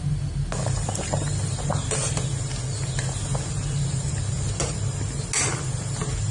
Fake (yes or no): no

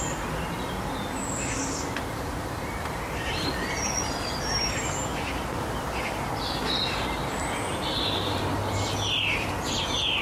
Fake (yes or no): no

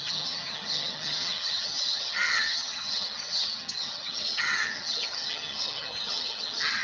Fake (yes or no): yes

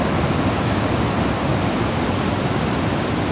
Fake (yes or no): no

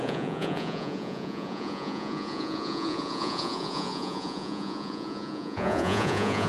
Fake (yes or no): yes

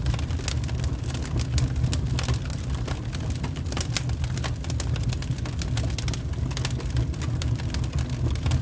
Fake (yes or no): no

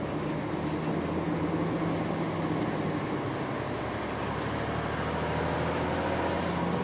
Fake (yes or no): no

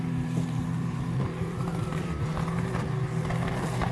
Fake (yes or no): yes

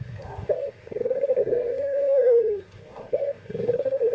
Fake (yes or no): yes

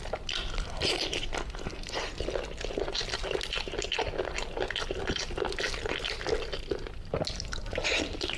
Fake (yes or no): no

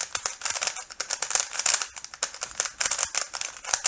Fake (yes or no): no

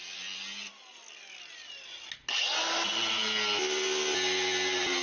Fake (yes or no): no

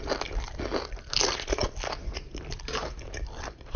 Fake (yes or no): no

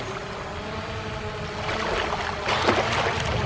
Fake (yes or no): no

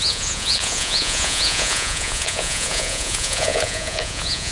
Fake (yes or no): yes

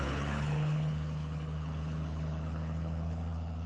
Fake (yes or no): yes